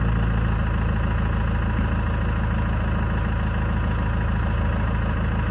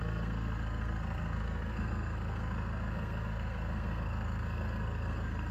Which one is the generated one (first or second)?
second